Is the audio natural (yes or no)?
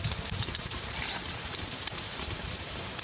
no